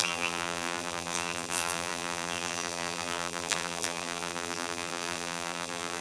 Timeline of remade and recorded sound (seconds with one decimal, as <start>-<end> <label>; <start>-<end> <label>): 0.0-6.0 remade